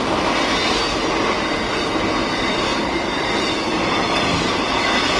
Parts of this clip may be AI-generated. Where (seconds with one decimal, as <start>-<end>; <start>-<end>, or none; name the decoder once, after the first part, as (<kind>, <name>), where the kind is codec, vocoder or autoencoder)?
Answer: none